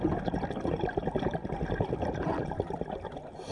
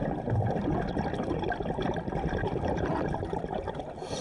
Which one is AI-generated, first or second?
second